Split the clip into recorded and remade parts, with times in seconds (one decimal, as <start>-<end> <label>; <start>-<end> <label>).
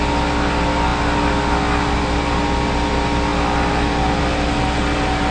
0.0-5.3 recorded